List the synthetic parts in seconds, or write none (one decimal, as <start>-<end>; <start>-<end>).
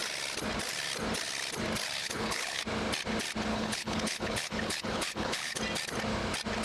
2.0-2.6; 3.5-5.6